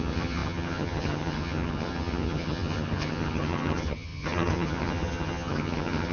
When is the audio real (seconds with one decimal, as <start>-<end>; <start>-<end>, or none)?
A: none